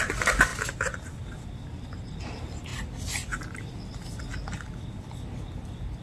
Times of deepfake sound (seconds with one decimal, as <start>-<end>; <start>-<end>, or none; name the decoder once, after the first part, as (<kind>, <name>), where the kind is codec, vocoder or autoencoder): none

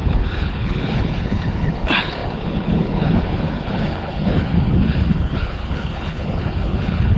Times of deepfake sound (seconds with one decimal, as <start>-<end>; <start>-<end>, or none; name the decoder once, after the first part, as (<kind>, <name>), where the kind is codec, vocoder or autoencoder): 0.0-7.2 (codec, HILCodec)

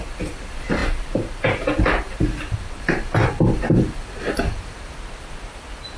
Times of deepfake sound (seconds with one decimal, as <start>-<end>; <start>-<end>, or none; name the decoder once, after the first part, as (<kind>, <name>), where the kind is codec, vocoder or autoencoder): none

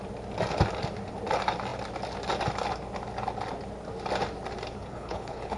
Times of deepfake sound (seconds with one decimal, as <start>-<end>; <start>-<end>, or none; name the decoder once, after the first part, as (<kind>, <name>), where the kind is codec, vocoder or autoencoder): 4.8-5.6 (codec, HILCodec)

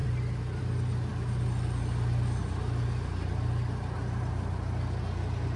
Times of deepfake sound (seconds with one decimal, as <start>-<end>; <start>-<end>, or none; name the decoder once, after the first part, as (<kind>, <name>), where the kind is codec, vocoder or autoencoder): none

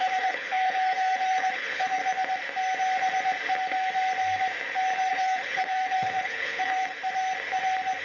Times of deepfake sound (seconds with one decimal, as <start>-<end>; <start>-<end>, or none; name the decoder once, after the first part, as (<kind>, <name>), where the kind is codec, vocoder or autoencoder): 0.0-2.0 (codec, HILCodec); 5.1-7.0